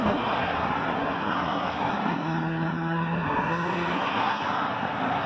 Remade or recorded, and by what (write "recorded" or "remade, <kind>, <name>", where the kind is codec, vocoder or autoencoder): remade, codec, SNAC